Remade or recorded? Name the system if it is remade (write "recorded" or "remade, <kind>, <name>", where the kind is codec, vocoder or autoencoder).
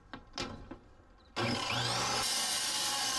recorded